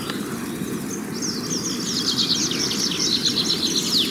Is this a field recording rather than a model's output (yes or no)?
yes